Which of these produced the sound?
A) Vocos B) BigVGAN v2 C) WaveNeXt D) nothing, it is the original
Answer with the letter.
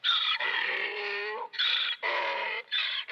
B